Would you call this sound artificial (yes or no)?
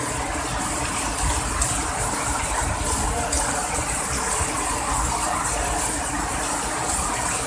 no